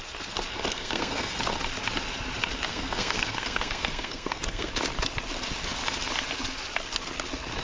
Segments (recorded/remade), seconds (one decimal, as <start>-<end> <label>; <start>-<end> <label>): 0.0-0.7 recorded; 0.7-1.4 remade; 1.4-2.7 recorded; 2.7-4.7 remade; 4.7-7.6 recorded